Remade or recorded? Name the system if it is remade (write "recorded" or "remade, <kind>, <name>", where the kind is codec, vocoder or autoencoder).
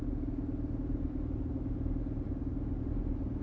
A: recorded